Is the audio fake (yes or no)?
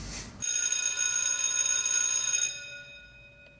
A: no